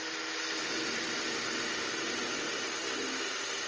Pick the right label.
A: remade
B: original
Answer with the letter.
B